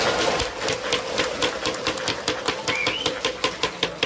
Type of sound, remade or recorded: recorded